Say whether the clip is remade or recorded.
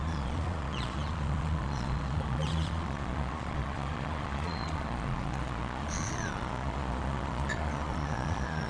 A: remade